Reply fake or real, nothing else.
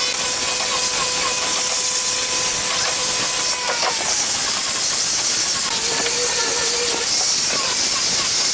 real